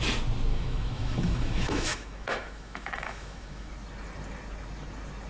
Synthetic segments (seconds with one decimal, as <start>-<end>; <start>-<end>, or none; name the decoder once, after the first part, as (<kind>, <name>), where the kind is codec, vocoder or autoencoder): 0.5-3.7 (autoencoder, DAC-VAE)